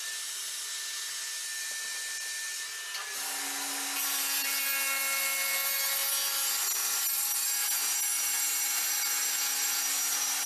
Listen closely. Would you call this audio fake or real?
real